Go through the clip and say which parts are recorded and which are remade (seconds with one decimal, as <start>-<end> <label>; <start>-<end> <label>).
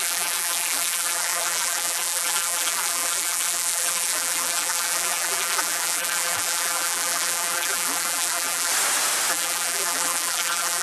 0.0-8.7 remade; 8.7-9.3 recorded; 9.3-10.8 remade